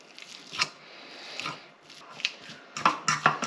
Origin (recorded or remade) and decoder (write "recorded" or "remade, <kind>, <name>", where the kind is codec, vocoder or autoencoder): recorded